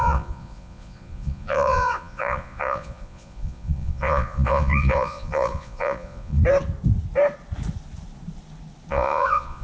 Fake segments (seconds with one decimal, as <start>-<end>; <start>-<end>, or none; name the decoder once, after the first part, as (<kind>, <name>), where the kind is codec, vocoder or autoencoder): 0.0-6.4 (vocoder, Vocos); 8.9-9.6